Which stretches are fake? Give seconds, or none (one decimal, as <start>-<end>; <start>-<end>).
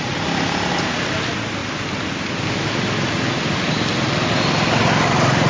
none